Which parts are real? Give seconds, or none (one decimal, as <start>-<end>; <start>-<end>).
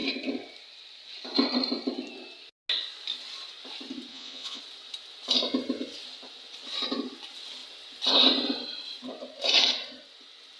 0.0-4.1; 4.6-10.6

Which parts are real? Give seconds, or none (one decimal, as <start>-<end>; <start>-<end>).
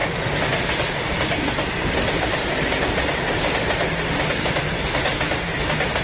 0.0-6.0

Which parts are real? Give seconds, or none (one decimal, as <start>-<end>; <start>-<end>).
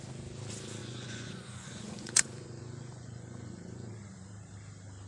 0.0-0.8; 3.9-5.1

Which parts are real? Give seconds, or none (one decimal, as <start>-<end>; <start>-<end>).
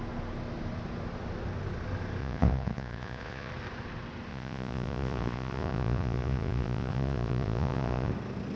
0.0-2.2; 3.5-4.3; 8.1-8.6